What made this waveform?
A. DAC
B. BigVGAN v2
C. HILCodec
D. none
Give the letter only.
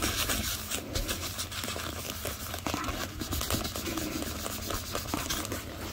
D